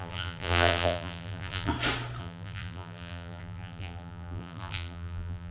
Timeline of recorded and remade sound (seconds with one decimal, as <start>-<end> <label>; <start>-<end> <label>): 0.0-1.7 remade; 1.7-2.2 recorded; 2.2-5.5 remade